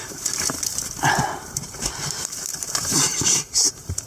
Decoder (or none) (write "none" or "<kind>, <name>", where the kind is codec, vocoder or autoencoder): vocoder, BigVGAN v2